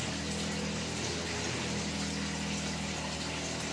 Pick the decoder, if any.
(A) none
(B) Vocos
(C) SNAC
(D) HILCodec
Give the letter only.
A